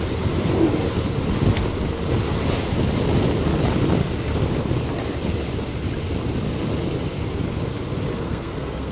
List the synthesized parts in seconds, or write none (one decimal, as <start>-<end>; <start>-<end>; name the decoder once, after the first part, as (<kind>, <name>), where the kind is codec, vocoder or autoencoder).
8.1-8.9 (codec, SNAC)